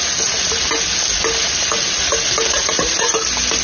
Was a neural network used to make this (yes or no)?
no